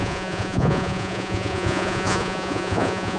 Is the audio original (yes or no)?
no